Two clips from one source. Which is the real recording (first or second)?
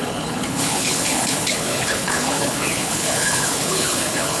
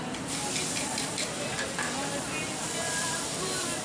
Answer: second